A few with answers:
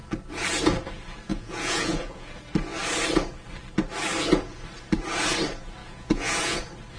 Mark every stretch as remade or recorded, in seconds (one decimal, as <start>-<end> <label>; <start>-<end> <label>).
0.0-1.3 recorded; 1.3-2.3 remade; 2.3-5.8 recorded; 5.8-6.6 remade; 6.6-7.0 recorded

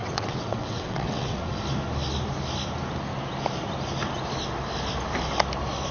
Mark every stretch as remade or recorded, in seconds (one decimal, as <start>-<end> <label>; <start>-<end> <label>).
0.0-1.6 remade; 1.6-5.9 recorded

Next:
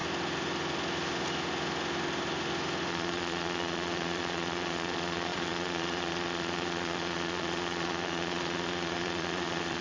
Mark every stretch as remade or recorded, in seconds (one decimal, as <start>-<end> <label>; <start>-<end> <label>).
0.0-2.9 recorded; 2.9-9.8 remade

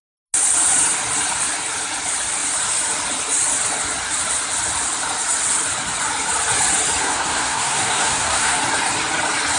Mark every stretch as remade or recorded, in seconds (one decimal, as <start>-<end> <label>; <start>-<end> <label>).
0.0-7.0 recorded; 7.0-8.6 remade; 8.6-9.6 recorded

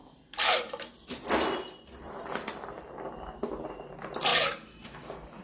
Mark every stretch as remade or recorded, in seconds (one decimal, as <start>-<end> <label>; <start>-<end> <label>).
0.0-5.4 recorded